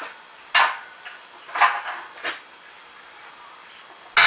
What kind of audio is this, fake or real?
real